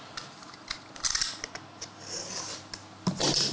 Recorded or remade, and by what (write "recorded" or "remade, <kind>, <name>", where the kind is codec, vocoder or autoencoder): recorded